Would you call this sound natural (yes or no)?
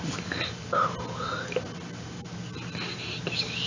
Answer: yes